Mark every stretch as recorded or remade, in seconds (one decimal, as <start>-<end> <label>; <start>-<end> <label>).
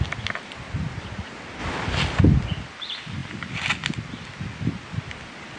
0.0-5.6 recorded